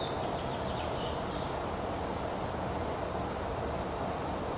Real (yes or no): yes